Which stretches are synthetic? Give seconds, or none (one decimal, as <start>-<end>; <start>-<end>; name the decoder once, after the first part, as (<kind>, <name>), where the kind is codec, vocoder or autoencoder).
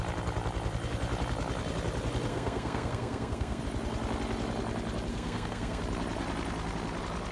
2.3-3.6 (codec, SNAC); 5.1-5.8